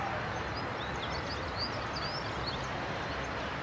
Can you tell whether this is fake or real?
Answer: real